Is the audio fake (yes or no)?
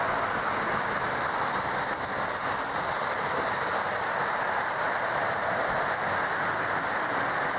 no